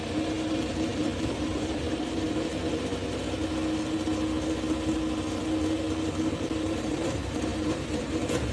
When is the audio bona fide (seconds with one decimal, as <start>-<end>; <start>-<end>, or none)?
2.9-6.3